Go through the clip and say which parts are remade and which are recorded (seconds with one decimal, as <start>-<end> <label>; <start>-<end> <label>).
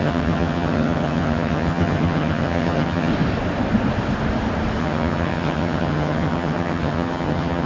0.0-3.1 remade; 3.1-4.8 recorded; 4.8-7.7 remade